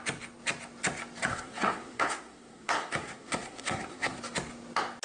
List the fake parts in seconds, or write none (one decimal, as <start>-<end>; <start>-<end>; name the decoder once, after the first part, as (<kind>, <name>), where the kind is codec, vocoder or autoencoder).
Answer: 1.3-4.2 (codec, SNAC)